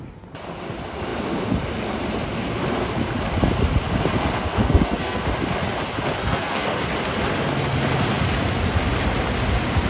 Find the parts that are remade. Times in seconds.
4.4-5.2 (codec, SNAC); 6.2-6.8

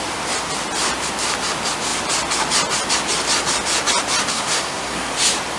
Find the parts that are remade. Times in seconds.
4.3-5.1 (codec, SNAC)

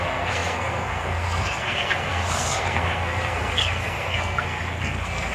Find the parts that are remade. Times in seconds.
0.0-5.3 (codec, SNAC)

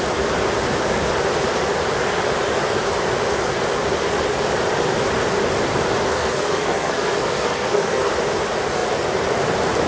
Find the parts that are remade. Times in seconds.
6.1-8.1 (codec, SNAC)